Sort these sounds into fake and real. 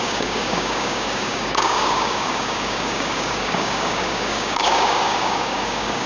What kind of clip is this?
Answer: fake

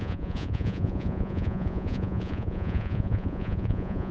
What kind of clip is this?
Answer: fake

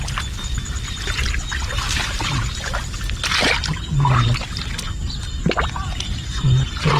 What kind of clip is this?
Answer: real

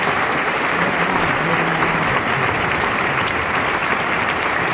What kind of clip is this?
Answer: fake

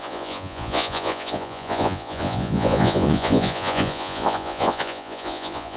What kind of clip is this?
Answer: fake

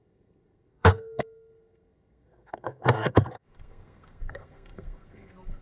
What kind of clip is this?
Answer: fake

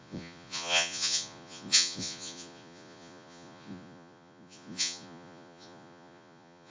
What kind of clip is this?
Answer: fake